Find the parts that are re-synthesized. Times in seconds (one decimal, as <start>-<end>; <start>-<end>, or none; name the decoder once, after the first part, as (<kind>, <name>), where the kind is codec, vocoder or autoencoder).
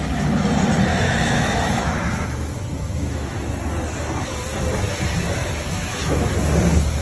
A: 0.9-3.6 (autoencoder, DAC-VAE); 5.4-6.3